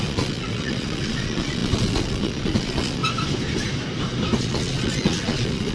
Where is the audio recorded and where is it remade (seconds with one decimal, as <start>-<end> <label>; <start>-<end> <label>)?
0.0-3.0 remade; 3.0-4.4 recorded; 4.4-5.7 remade